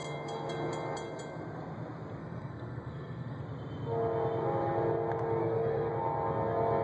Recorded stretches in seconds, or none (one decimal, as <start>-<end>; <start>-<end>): 0.0-2.2; 3.4-5.4; 5.9-6.8